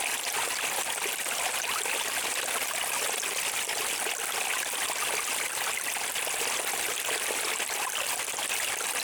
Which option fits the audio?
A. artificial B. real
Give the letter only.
B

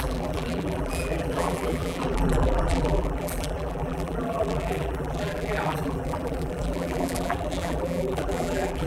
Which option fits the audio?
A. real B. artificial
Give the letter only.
B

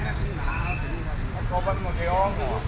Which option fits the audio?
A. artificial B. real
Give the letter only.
B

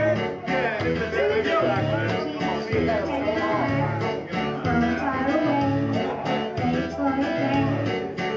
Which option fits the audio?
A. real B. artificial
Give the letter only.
A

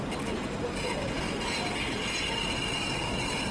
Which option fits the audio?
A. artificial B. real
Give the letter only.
B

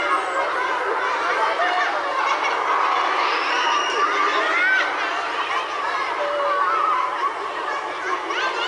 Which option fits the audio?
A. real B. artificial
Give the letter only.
A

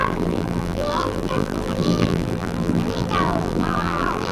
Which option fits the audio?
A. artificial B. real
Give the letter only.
A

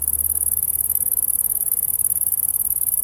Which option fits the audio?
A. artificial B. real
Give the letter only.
A